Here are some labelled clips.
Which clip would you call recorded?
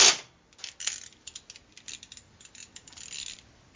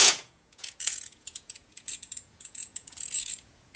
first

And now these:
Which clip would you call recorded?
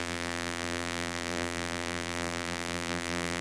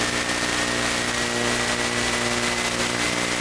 second